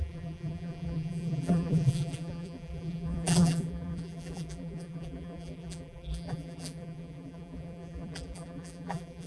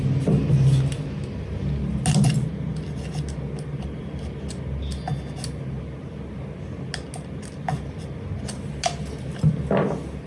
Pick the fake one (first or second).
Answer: first